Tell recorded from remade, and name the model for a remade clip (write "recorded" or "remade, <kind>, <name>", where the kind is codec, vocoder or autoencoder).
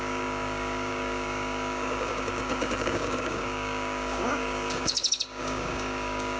remade, codec, DAC